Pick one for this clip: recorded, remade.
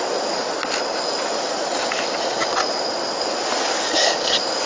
recorded